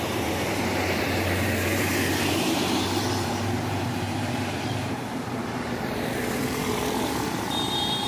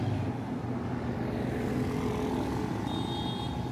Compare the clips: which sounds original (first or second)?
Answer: second